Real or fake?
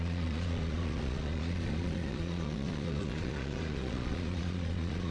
fake